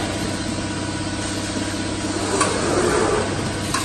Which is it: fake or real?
real